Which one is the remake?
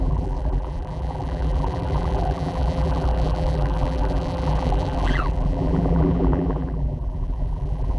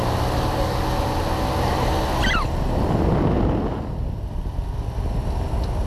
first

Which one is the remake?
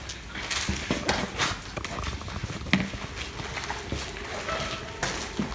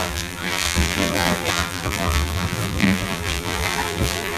second